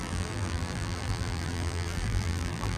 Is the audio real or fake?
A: fake